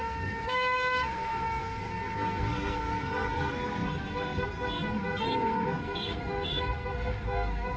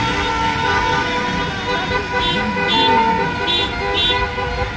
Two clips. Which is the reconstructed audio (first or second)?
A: first